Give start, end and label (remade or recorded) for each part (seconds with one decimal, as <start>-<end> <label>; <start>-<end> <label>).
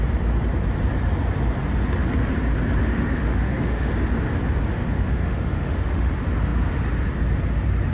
0.0-2.8 recorded; 2.8-3.9 remade; 3.9-4.7 recorded; 4.7-6.1 remade; 6.1-7.9 recorded